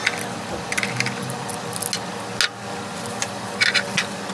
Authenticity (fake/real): real